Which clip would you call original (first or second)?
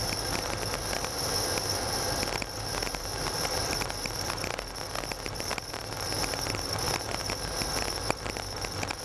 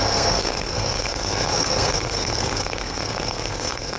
first